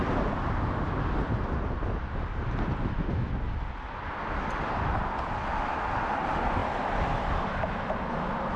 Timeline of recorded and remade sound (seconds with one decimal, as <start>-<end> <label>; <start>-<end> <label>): 0.0-8.6 recorded